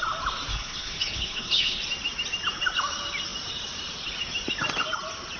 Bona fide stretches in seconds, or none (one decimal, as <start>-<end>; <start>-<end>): 0.0-0.5; 1.8-5.4